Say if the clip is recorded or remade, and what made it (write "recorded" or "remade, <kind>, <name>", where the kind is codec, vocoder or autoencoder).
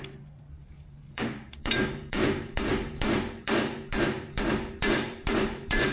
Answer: remade, vocoder, BigVGAN v2